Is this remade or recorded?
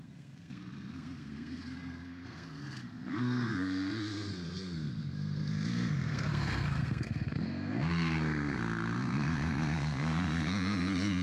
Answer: remade